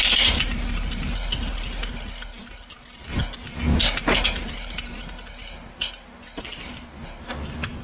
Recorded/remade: recorded